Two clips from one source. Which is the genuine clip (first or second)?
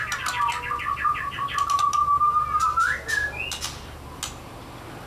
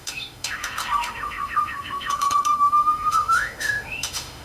first